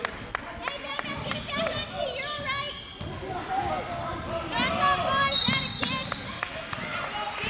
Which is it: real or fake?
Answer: real